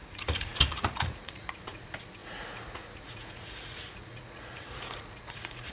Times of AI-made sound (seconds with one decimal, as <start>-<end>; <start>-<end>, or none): 0.0-5.7